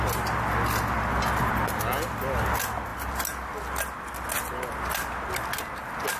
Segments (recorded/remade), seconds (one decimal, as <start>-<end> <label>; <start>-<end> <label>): 0.0-6.2 recorded